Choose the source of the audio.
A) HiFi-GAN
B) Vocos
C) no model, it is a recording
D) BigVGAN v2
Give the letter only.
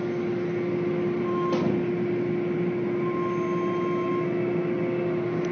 C